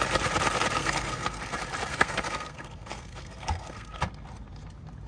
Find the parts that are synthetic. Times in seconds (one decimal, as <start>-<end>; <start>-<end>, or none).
0.8-1.4; 1.9-4.0